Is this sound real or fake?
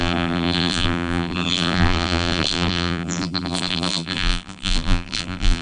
fake